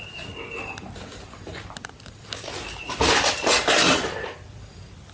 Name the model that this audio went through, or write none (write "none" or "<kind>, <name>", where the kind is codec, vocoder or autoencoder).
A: none